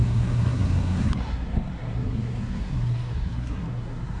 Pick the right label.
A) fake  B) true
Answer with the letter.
A